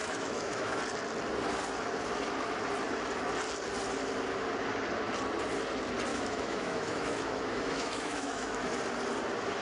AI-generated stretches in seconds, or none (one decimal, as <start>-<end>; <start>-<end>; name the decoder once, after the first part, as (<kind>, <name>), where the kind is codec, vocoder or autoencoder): 0.0-0.8 (autoencoder, DAC-VAE); 6.1-8.8